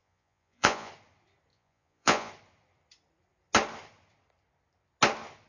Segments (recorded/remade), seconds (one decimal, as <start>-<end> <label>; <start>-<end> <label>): 0.0-0.9 remade; 0.9-1.5 recorded; 1.5-2.3 remade; 2.3-5.5 recorded